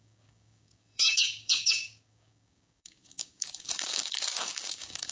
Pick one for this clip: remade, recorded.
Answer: remade